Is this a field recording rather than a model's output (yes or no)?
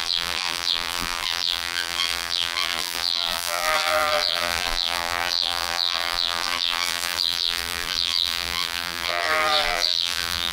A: no